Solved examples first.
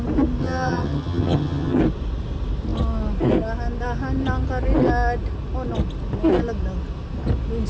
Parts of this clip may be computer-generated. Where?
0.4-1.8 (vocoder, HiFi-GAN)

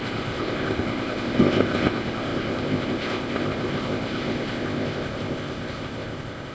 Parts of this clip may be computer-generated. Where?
0.0-6.5 (codec, ZipCodec)

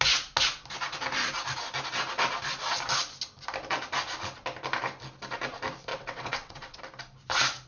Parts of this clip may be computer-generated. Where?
5.9-6.8 (vocoder, WaveNeXt)

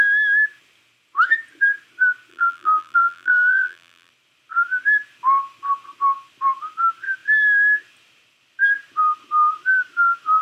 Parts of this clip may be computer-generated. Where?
2.3-4.1 (vocoder, BigVGAN v2)